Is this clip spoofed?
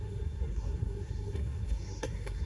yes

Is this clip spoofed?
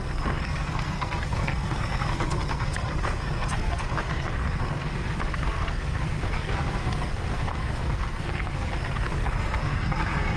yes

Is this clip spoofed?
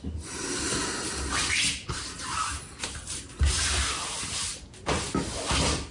no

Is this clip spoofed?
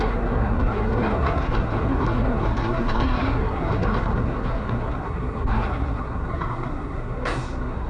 yes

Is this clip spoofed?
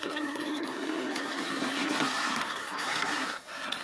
yes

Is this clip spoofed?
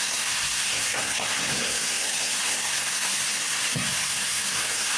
yes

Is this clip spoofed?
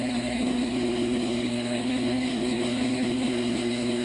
yes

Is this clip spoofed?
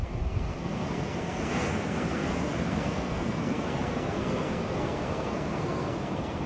yes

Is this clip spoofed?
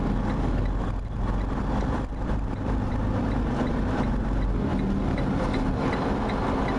no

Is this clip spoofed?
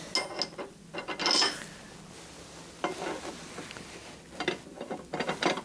no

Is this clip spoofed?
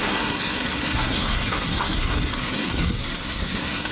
yes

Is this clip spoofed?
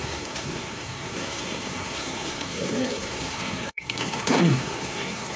yes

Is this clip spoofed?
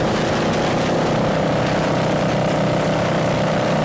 no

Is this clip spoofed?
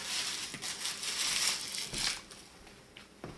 no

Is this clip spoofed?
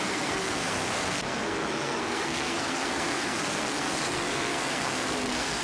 yes